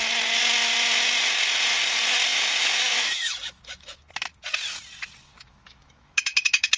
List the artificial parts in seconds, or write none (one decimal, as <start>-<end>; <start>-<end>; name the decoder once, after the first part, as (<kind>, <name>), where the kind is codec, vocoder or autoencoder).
2.3-4.1 (autoencoder, DAC-VAE); 5.3-6.8